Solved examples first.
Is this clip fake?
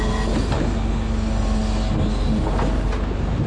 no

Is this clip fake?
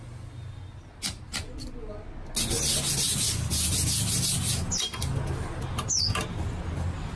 no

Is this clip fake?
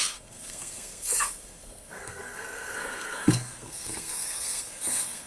yes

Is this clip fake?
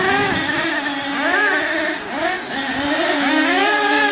no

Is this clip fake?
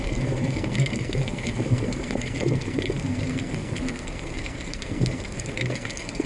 yes